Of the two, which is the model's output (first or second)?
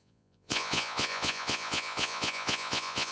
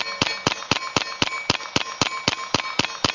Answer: first